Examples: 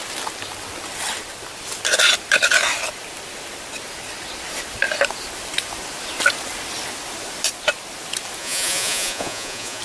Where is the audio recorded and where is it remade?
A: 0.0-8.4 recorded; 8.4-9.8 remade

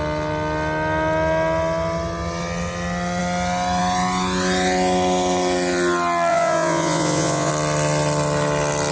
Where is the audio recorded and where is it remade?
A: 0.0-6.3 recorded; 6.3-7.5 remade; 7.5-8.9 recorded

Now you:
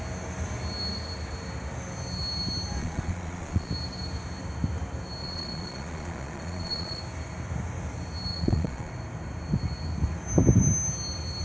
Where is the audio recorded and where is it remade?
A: 0.0-2.8 recorded; 2.8-3.7 remade; 3.7-5.2 recorded; 5.2-7.0 remade; 7.0-8.3 recorded; 8.3-8.9 remade; 8.9-11.4 recorded

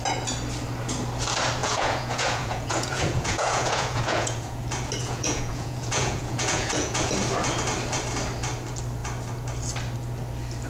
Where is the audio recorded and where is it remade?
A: 0.0-1.6 recorded; 1.6-4.6 remade; 4.6-5.0 recorded; 5.0-7.1 remade; 7.1-10.7 recorded